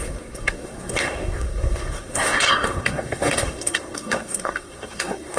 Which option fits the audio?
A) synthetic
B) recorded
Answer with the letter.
A